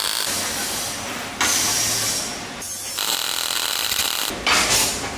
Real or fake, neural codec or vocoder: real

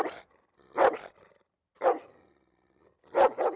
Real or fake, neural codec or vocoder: real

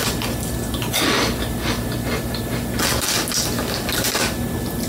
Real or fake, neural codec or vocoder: real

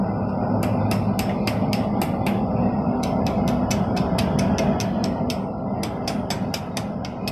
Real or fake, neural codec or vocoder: real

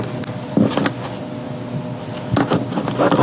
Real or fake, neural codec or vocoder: real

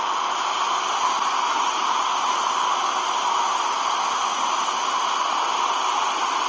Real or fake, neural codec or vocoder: real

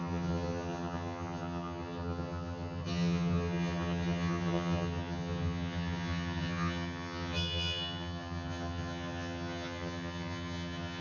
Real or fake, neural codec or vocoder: fake, vocoder, HiFi-GAN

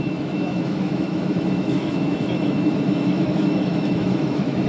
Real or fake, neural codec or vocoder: fake, autoencoder, DAC-VAE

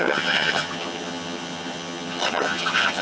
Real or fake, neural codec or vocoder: fake, vocoder, HiFi-GAN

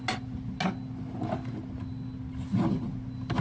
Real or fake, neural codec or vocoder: real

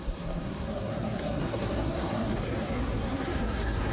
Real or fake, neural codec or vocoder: fake, codec, SNAC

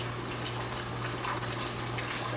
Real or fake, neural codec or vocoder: real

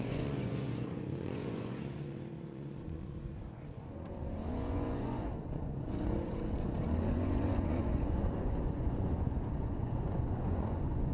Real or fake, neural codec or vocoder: fake, vocoder, Vocos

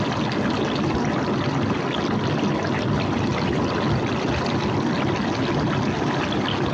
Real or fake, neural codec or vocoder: real